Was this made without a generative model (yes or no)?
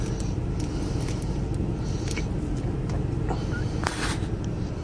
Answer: yes